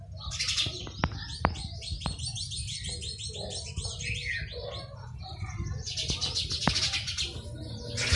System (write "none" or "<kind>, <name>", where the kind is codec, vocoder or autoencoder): none